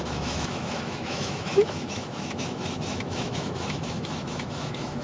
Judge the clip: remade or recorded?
remade